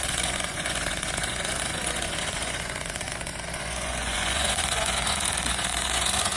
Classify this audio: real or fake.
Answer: fake